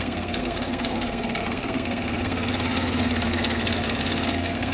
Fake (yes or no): yes